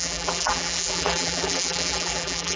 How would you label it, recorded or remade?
remade